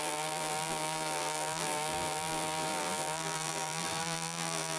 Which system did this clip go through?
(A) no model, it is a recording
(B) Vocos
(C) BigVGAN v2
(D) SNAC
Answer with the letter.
C